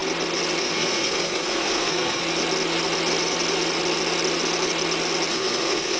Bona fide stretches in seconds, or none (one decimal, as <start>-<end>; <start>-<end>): 0.0-0.6; 2.2-5.3